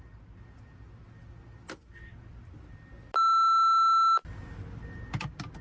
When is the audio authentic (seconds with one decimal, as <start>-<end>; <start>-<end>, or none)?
0.0-5.6